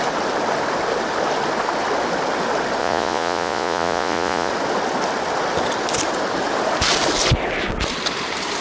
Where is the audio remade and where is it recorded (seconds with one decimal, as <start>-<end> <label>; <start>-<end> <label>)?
0.0-2.8 recorded; 2.8-4.5 remade; 4.5-8.6 recorded